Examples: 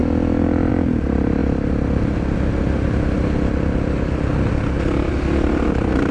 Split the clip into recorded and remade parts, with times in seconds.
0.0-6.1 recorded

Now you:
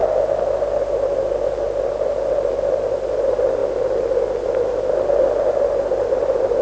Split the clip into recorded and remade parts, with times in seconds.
0.0-6.6 recorded

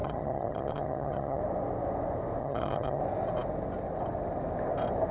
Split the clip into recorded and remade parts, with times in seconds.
0.0-1.4 remade; 1.4-2.4 recorded; 2.4-3.0 remade; 3.0-5.1 recorded

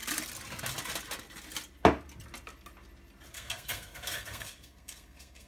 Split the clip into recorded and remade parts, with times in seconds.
0.0-3.3 recorded; 3.3-5.5 remade

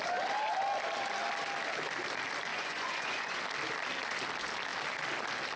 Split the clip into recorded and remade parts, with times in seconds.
0.0-2.5 recorded; 2.5-3.4 remade; 3.4-5.6 recorded